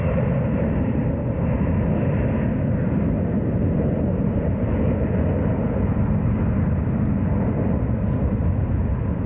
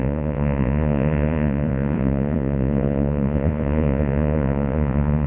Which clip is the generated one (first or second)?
second